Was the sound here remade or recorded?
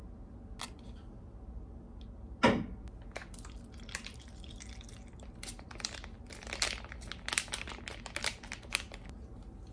recorded